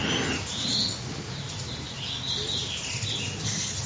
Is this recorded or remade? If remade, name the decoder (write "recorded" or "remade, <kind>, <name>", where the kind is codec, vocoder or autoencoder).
recorded